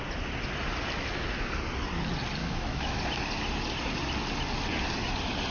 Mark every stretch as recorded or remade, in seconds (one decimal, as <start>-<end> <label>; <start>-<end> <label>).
0.0-2.4 recorded; 2.4-3.0 remade; 3.0-5.5 recorded